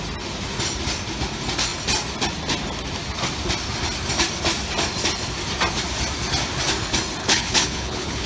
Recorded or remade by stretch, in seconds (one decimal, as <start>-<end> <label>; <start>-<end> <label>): 0.0-7.2 recorded; 7.2-8.3 remade